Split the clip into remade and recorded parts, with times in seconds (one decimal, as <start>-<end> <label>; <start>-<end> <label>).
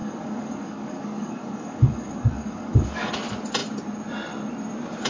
0.0-3.1 remade; 3.1-5.1 recorded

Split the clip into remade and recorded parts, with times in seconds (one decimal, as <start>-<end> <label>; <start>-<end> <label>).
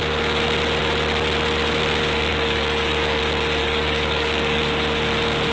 0.0-2.3 recorded; 2.3-3.2 remade; 3.2-3.6 recorded; 3.6-4.6 remade; 4.6-5.5 recorded